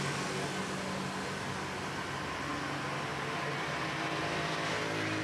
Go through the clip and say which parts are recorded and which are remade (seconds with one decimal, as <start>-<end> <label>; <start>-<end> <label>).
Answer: 0.0-5.2 recorded